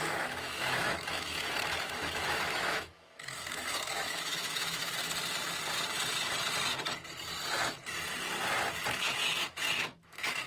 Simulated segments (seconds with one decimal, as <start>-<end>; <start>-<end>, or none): 0.0-4.9; 8.9-10.5